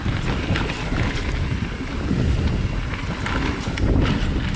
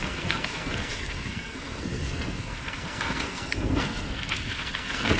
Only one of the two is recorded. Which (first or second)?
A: first